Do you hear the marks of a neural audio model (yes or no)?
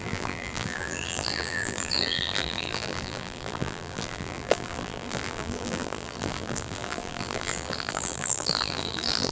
yes